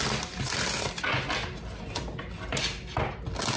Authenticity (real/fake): real